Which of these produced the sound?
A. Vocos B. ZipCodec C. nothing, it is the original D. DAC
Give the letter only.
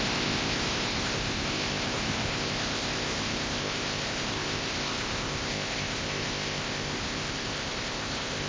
B